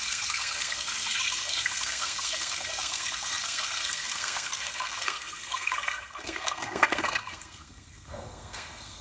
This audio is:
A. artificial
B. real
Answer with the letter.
A